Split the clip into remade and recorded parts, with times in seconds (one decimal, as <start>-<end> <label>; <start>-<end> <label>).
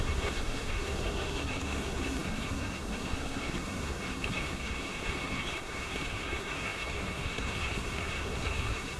0.0-9.0 remade